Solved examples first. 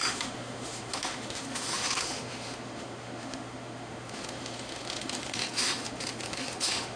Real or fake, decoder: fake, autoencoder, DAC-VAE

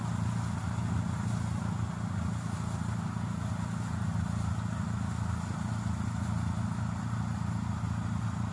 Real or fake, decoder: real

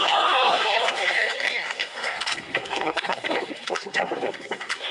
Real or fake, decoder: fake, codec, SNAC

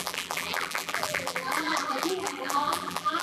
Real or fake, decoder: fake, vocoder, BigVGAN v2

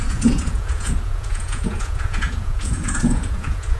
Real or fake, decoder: fake, vocoder, Vocos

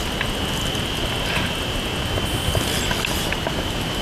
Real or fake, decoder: real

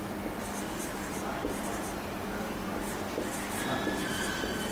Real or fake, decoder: real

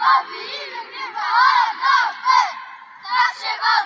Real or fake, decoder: real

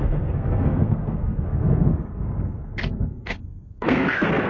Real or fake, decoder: fake, codec, SNAC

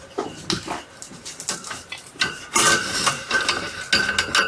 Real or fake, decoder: real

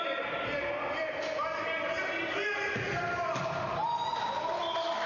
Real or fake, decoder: real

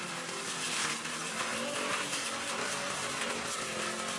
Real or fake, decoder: real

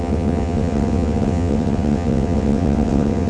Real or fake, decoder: fake, vocoder, WaveNeXt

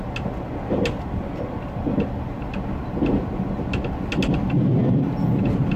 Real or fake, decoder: real